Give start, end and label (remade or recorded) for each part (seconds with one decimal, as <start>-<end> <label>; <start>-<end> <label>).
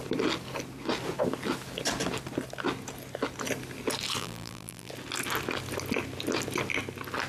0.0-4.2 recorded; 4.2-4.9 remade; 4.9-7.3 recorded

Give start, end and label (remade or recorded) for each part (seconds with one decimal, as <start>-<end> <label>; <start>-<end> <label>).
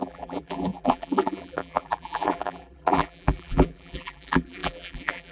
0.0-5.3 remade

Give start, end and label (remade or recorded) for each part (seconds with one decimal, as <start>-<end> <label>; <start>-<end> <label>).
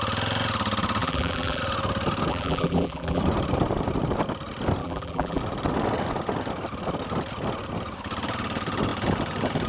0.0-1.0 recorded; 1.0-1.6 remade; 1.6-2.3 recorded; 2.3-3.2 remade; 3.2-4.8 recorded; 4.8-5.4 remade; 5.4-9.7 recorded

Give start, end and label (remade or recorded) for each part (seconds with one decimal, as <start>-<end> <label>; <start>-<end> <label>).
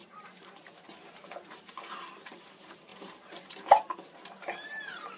0.0-5.2 remade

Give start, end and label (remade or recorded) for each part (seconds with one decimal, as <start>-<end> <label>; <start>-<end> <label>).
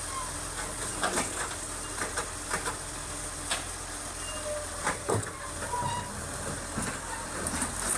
0.0-8.0 recorded